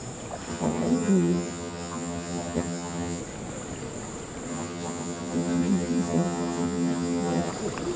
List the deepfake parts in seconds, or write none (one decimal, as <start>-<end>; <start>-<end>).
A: 0.5-3.2; 4.5-7.5